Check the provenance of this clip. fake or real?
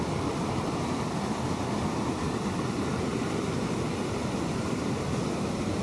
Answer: real